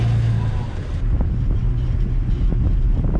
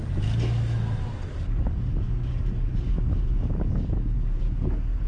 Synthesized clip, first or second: second